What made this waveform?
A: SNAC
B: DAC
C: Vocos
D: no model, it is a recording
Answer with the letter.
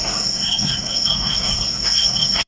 A